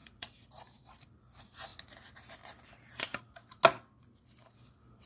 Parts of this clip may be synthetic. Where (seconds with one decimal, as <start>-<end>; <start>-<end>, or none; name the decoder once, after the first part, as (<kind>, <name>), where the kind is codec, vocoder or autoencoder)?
0.0-1.7 (vocoder, BigVGAN v2); 4.5-5.1